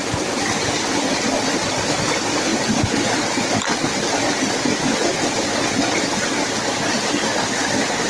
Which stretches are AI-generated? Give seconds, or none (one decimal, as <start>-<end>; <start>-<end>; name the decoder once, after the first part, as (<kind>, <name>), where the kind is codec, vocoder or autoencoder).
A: none